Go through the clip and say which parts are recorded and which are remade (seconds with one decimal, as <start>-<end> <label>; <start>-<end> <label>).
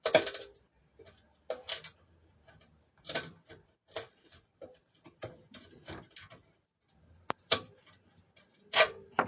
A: 0.0-9.3 recorded